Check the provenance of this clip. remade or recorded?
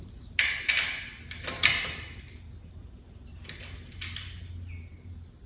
recorded